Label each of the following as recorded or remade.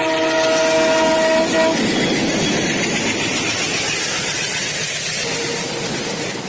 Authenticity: recorded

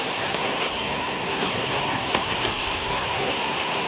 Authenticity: remade